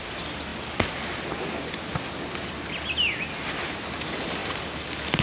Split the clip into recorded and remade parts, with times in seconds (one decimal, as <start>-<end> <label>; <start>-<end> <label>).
0.0-5.2 recorded